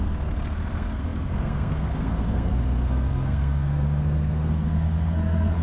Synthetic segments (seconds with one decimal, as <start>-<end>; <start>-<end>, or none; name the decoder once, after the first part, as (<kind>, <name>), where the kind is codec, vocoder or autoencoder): 0.0-5.6 (codec, SNAC)